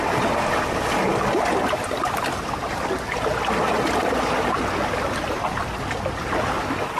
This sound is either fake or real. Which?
real